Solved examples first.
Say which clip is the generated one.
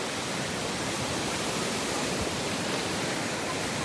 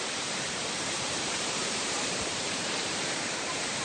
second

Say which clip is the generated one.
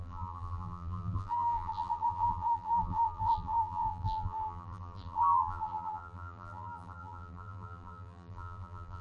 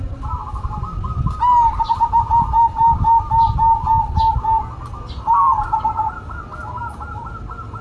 first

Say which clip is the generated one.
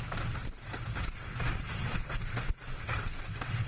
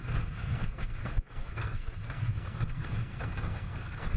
second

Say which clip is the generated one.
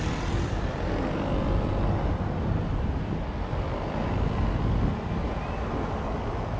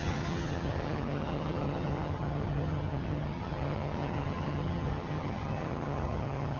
second